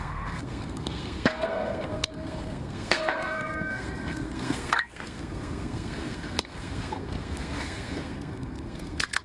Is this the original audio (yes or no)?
no